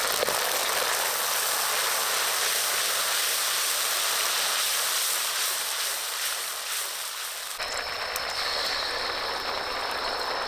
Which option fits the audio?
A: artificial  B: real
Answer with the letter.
B